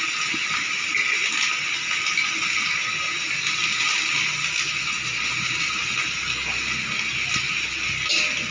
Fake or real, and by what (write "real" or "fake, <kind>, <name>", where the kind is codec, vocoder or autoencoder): real